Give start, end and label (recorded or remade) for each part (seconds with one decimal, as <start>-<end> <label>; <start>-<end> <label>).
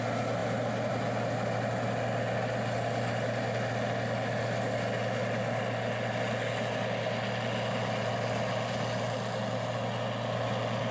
0.0-10.9 recorded